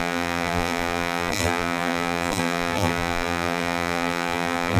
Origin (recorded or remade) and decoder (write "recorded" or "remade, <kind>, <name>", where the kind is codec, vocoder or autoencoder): remade, vocoder, BigVGAN v2